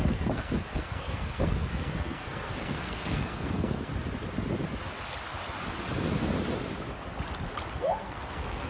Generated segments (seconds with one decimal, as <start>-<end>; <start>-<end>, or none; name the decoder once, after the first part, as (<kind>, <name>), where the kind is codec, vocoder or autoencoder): 0.0-3.9 (codec, SNAC); 7.7-8.7